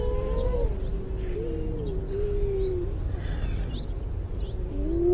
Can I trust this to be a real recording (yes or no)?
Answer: yes